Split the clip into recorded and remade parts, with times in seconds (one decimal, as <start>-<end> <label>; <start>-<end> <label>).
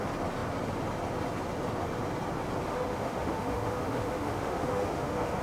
0.0-2.7 recorded; 2.7-5.4 remade